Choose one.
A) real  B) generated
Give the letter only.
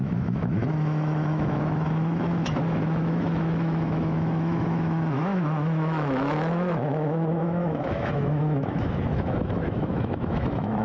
B